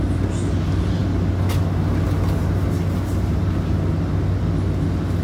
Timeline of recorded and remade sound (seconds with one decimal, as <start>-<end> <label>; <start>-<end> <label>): 0.0-5.2 recorded